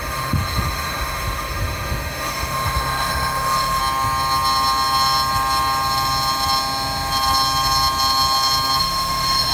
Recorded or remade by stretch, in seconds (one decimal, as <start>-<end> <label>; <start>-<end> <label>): 0.0-3.8 remade; 3.8-8.8 recorded; 8.8-9.5 remade